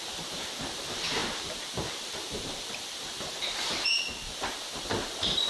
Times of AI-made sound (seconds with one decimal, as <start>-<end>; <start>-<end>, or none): 0.0-5.5